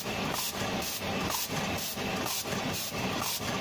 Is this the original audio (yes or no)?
yes